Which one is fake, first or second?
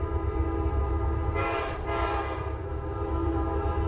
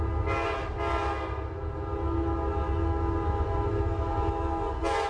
first